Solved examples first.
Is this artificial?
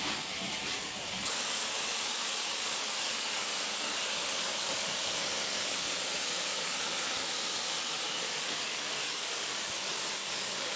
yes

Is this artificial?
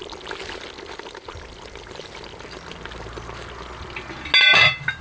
no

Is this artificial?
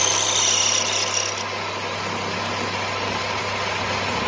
no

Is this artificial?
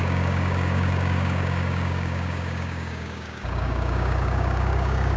yes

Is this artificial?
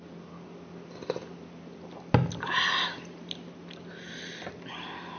no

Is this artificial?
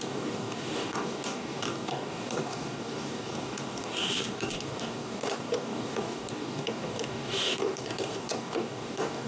yes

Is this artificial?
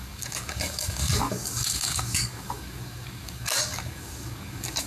yes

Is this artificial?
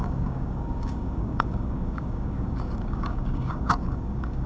yes